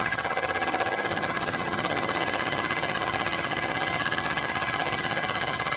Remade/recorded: remade